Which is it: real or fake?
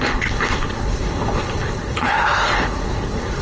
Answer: fake